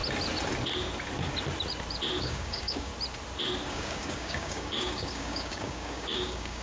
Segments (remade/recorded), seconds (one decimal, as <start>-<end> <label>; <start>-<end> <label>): 0.0-2.2 recorded; 2.2-2.9 remade; 2.9-3.7 recorded; 3.7-6.6 remade